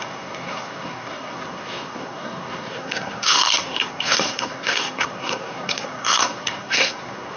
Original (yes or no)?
no